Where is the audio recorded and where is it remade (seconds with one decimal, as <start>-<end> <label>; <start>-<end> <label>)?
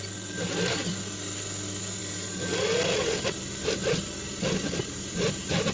0.0-5.7 recorded